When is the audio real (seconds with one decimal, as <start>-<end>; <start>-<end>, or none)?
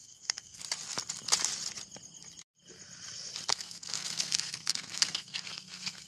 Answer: 0.6-3.5